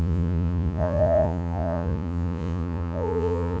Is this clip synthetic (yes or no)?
yes